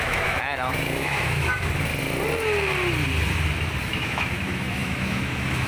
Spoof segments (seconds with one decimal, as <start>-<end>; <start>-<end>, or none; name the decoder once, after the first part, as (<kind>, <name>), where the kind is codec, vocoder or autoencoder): 0.0-1.9 (autoencoder, DAC-VAE); 3.8-5.7